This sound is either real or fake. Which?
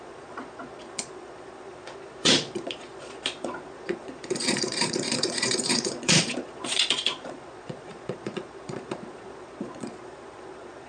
fake